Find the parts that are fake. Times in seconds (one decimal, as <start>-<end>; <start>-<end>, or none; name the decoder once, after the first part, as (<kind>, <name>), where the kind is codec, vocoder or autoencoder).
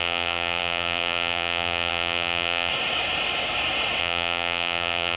0.0-2.7 (vocoder, BigVGAN v2); 4.0-5.2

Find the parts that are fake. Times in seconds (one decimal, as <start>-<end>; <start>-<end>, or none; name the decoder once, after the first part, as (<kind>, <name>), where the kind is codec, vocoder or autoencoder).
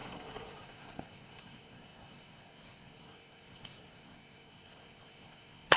0.0-5.8 (codec, SNAC)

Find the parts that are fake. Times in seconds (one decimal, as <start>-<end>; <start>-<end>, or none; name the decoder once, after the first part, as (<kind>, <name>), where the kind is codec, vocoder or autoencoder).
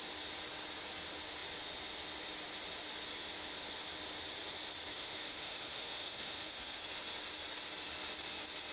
4.9-6.8 (autoencoder, DAC-VAE)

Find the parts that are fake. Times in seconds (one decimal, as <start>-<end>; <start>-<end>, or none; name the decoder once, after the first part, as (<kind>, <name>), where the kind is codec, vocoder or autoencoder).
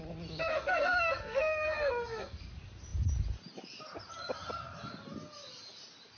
0.5-2.4 (codec, SNAC)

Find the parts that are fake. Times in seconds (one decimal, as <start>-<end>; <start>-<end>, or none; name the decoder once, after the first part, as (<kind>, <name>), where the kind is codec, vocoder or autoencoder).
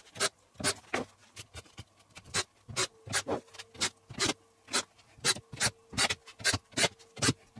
none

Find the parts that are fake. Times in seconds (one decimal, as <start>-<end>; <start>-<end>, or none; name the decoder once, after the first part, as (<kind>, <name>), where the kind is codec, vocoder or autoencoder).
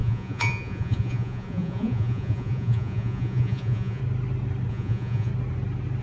0.0-4.0 (vocoder, Vocos); 4.7-5.3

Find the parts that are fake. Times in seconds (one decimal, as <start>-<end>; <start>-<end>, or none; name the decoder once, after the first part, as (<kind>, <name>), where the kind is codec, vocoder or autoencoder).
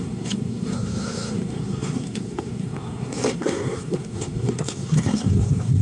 0.0-5.8 (codec, SNAC)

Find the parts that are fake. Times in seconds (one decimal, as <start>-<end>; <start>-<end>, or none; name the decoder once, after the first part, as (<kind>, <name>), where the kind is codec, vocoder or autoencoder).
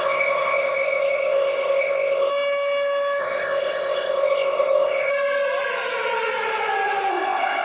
0.0-2.3 (codec, ZipCodec); 3.2-5.1; 7.1-7.6